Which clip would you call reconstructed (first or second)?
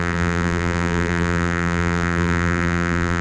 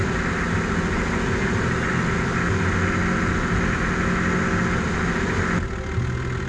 first